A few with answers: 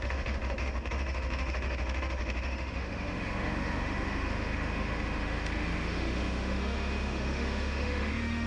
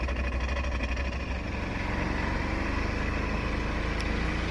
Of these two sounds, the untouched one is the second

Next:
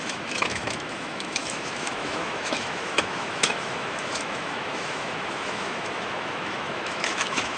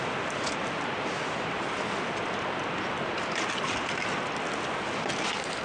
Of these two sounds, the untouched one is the second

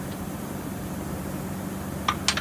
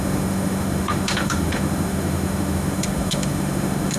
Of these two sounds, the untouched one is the first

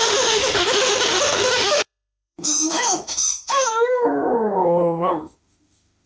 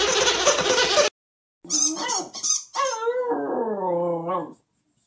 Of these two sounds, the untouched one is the second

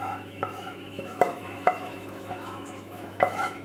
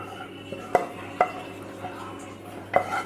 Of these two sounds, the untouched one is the second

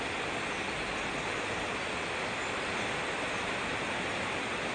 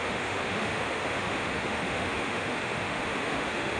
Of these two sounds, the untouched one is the first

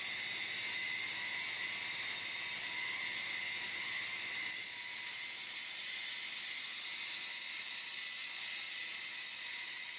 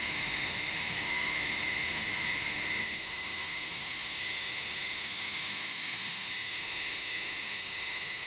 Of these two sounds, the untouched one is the first